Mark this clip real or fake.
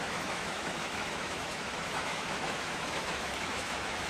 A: fake